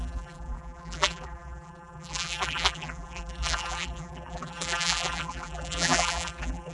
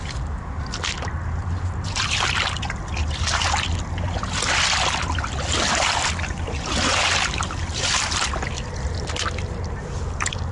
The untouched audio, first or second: second